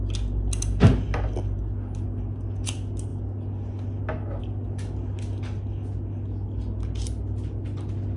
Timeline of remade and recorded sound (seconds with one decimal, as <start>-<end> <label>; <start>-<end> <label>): 0.0-8.2 recorded